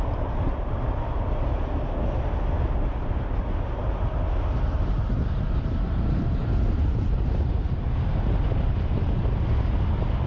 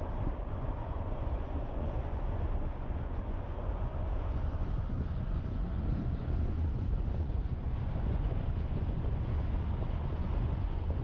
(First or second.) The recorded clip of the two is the first